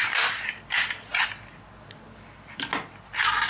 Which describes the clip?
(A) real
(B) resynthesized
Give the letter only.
A